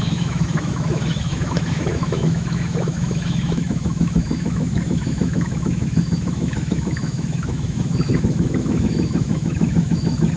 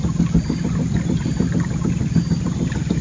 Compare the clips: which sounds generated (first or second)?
first